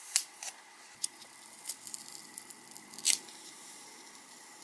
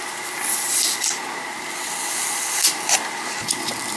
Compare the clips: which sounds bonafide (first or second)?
second